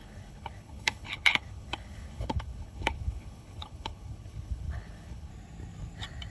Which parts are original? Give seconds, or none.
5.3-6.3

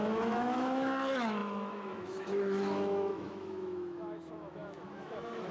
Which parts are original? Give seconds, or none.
none

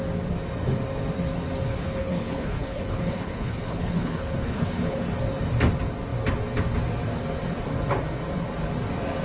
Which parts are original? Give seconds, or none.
0.0-1.7; 5.0-9.2

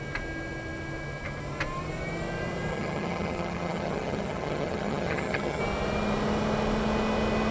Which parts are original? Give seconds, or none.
0.0-2.7; 5.6-7.5

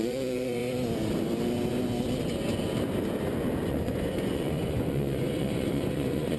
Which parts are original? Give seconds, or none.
0.6-3.7